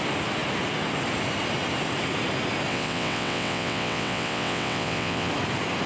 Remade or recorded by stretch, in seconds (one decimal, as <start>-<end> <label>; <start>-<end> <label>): 0.0-2.7 recorded; 2.7-5.3 remade; 5.3-5.9 recorded